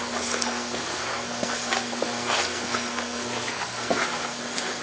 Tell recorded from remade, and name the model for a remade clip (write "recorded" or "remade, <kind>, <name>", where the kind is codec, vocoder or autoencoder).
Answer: remade, codec, SNAC